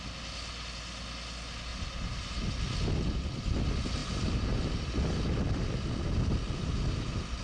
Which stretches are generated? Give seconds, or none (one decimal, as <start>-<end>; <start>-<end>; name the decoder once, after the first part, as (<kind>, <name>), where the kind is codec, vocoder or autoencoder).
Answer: 1.7-2.5 (vocoder, BigVGAN v2); 4.0-4.7

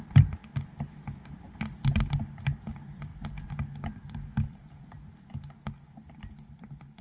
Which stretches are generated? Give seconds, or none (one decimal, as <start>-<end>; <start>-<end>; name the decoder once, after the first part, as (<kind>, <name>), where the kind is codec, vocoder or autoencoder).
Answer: 0.0-0.4 (vocoder, BigVGAN v2); 2.3-7.0